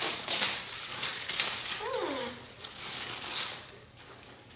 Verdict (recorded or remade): remade